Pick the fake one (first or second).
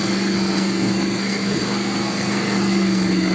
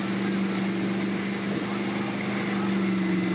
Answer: first